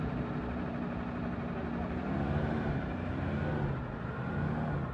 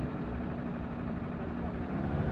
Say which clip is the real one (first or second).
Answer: first